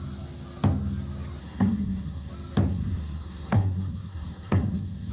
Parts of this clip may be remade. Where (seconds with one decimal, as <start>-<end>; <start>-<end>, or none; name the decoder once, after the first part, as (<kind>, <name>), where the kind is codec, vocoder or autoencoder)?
1.4-2.3 (codec, SNAC); 2.7-5.1